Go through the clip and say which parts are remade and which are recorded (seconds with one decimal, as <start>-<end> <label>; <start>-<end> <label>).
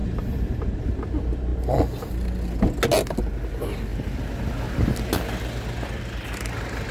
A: 0.0-6.9 recorded